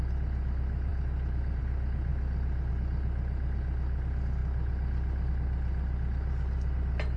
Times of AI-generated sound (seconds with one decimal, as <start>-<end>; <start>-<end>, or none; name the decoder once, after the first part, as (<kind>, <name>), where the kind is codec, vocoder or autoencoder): none